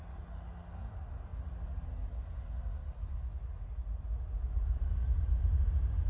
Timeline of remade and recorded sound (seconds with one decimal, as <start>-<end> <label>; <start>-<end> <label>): 0.0-6.1 recorded